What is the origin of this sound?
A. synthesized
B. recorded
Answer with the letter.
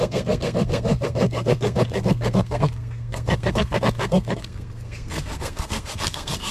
A